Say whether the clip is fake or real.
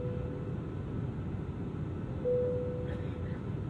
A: real